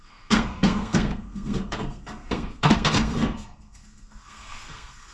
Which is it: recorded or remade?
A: remade